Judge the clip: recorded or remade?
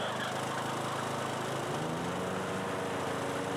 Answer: recorded